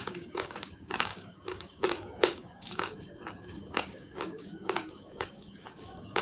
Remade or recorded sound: remade